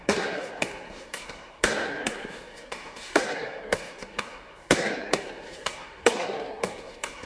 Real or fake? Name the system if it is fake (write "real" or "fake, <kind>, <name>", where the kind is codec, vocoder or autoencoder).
fake, codec, SNAC